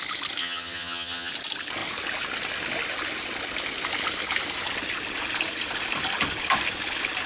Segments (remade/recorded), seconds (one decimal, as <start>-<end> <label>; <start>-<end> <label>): 0.0-0.4 recorded; 0.4-1.3 remade; 1.3-7.3 recorded